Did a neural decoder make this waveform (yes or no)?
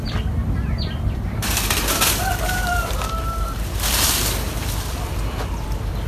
yes